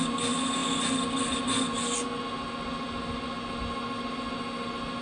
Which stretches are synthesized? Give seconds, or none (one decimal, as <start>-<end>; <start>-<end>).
none

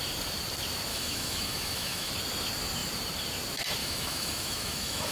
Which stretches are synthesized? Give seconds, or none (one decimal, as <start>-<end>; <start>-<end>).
0.9-2.1; 3.8-5.1